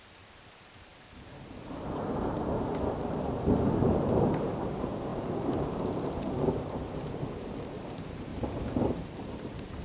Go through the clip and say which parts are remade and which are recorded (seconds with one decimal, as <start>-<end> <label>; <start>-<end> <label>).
0.0-8.3 remade; 8.3-8.9 recorded; 8.9-9.8 remade